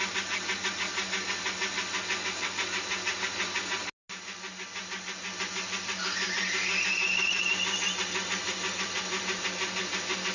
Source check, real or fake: real